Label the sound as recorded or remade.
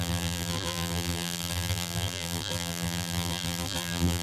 remade